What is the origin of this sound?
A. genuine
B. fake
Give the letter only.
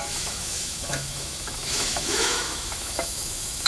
B